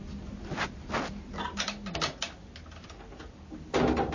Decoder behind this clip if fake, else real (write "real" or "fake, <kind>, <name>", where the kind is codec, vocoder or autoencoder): real